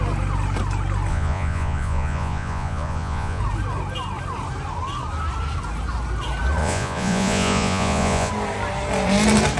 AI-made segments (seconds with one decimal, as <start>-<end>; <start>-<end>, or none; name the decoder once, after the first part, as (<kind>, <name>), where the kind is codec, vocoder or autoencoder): 1.1-3.4 (vocoder, Vocos); 6.6-8.3